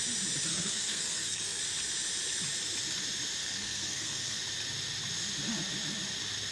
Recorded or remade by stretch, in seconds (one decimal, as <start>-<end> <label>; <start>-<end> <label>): 0.0-0.5 recorded; 0.5-1.6 remade; 1.6-3.4 recorded; 3.4-4.4 remade; 4.4-6.5 recorded